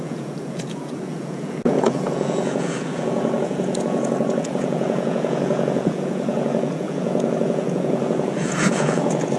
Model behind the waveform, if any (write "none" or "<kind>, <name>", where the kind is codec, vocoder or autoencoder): vocoder, Vocos